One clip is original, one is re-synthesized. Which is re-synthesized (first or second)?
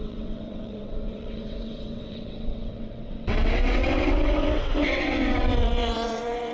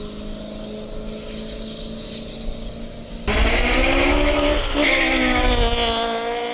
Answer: first